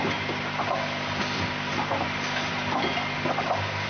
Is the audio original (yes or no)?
yes